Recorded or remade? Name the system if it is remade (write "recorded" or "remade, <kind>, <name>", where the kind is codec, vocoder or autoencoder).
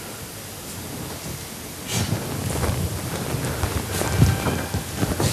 recorded